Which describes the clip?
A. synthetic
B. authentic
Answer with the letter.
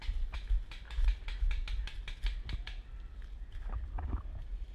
B